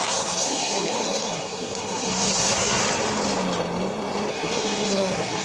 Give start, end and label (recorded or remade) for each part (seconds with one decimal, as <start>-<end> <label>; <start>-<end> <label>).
0.0-2.8 remade; 2.8-4.3 recorded; 4.3-5.4 remade